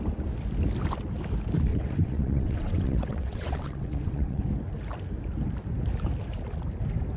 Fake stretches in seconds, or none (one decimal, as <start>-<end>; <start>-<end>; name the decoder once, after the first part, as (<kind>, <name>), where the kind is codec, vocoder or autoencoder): 1.7-4.4 (vocoder, WaveNeXt)